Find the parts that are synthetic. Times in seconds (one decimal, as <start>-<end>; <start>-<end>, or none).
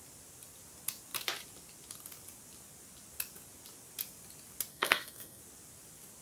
4.7-5.4